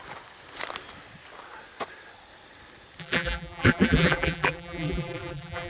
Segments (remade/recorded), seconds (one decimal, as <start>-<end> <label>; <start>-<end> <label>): 0.0-3.0 recorded; 3.0-5.7 remade